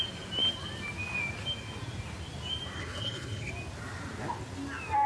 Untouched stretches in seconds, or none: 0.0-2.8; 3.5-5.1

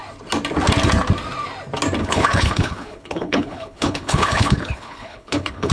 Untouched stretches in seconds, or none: 0.0-2.0

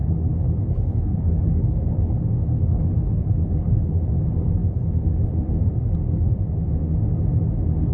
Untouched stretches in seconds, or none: 4.0-7.9

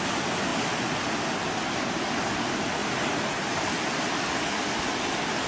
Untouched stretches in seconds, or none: 0.0-5.5

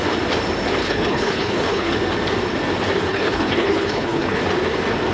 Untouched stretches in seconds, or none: 0.0-0.8; 1.9-3.1; 4.4-5.1

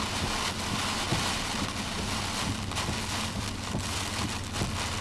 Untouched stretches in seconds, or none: 0.0-5.0